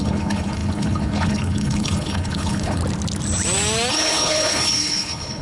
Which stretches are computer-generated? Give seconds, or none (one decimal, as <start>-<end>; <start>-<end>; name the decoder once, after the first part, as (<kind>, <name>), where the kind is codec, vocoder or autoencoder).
0.0-2.8 (codec, HILCodec); 3.9-5.4